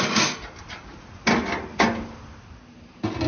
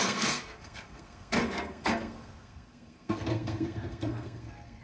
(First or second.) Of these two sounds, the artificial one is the second